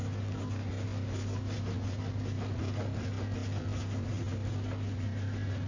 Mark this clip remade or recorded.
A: recorded